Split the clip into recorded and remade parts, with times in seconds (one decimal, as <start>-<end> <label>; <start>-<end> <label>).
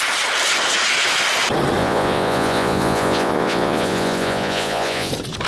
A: 0.0-1.8 recorded; 1.8-5.1 remade; 5.1-5.5 recorded